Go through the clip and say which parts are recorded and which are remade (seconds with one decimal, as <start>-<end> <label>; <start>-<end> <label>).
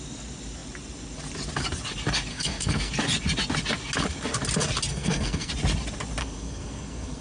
0.0-2.3 recorded; 2.3-2.9 remade; 2.9-4.9 recorded; 4.9-5.5 remade; 5.5-6.2 recorded; 6.2-7.2 remade